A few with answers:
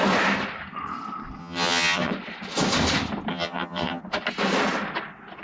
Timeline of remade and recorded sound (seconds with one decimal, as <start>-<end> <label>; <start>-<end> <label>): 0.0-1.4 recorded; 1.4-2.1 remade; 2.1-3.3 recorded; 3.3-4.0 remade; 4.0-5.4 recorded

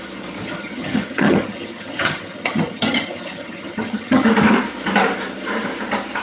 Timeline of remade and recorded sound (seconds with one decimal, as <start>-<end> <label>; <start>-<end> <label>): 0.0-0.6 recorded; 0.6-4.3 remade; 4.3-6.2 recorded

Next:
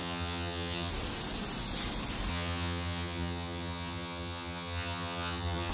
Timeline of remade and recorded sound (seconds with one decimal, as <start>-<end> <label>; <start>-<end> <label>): 0.0-0.9 remade; 0.9-2.3 recorded; 2.3-5.7 remade